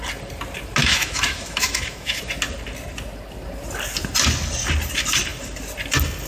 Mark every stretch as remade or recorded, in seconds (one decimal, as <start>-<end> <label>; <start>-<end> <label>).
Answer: 0.0-0.8 recorded; 0.8-2.2 remade; 2.2-6.3 recorded